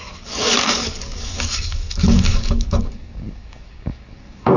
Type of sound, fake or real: fake